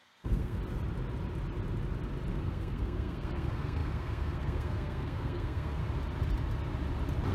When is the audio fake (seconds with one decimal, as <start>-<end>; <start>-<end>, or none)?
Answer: 0.0-0.6; 2.3-5.8